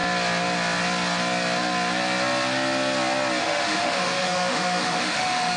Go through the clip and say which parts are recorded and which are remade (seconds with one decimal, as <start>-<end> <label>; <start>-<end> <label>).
0.0-3.4 recorded; 3.4-5.6 remade

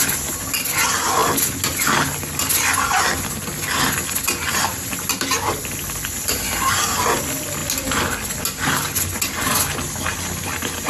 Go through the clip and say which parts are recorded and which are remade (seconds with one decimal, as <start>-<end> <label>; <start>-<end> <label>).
0.0-10.9 recorded